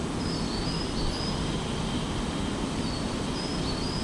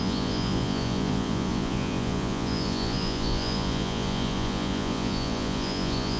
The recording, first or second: first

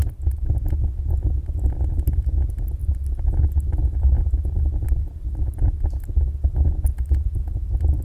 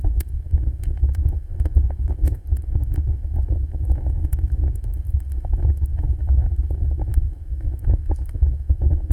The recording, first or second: first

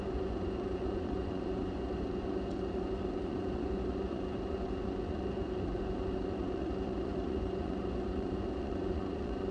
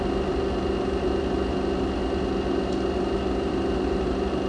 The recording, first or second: second